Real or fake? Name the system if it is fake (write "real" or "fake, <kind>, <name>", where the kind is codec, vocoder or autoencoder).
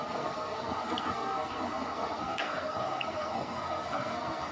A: fake, codec, SNAC